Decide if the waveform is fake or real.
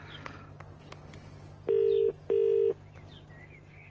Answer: real